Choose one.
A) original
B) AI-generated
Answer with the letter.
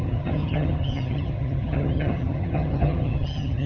B